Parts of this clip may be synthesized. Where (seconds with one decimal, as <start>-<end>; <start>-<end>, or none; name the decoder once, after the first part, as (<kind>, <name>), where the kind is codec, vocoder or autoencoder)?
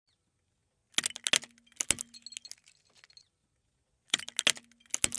3.4-4.2 (vocoder, Vocos)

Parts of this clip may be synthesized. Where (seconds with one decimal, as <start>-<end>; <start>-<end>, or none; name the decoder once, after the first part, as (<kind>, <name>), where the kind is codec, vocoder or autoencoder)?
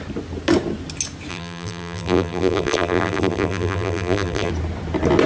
1.3-4.5 (vocoder, BigVGAN v2)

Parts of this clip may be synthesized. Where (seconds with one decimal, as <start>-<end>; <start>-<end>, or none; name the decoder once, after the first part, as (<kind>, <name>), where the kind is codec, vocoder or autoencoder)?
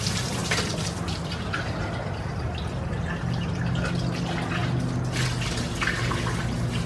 none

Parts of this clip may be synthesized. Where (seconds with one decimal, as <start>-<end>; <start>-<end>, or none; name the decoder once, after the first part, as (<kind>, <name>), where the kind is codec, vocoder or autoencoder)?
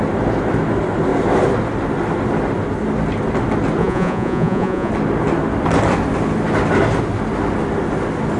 3.8-4.9 (vocoder, Vocos)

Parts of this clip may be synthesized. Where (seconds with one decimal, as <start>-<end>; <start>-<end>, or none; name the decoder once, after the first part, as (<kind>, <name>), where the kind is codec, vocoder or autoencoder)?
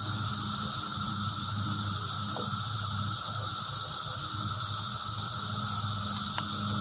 0.9-3.9 (vocoder, BigVGAN v2)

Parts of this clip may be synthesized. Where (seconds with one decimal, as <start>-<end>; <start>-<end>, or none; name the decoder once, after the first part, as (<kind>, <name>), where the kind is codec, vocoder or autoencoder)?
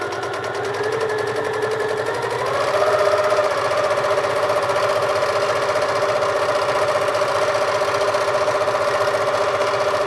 none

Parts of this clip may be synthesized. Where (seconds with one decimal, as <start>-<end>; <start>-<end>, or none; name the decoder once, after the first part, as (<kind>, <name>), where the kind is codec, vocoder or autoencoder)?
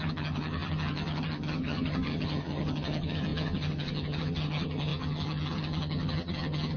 0.0-6.8 (vocoder, HiFi-GAN)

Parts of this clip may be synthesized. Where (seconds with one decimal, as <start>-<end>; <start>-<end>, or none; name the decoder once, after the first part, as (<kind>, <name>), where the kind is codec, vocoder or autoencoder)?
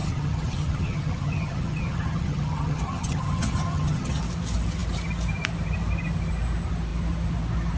0.0-4.2 (vocoder, HiFi-GAN)